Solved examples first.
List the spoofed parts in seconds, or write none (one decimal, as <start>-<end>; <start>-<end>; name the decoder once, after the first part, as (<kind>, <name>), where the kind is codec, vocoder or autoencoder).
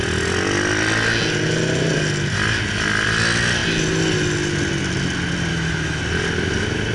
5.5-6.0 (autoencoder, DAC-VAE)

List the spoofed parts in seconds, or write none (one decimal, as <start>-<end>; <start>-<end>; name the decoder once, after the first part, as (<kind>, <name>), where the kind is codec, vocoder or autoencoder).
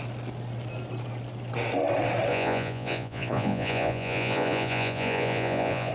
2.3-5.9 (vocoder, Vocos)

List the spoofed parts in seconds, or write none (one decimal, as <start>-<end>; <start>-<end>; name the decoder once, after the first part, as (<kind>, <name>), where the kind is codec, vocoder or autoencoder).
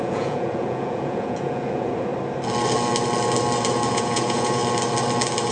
0.0-2.1 (vocoder, Vocos); 3.9-4.6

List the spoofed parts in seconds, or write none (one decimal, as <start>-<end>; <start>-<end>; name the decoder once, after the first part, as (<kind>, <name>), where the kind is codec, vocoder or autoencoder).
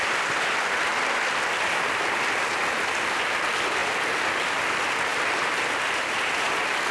3.8-4.6 (vocoder, BigVGAN v2); 5.1-6.4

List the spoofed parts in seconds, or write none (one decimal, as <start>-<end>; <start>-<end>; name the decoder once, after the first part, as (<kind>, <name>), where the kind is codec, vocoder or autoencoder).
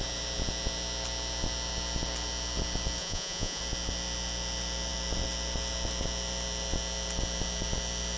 3.0-3.6 (vocoder, Vocos)